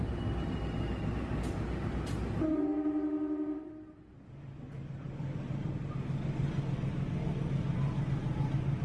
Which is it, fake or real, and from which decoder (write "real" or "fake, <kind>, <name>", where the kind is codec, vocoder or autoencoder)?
real